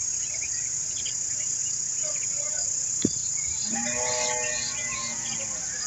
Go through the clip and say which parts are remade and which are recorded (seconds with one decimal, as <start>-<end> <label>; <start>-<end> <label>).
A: 0.0-5.9 recorded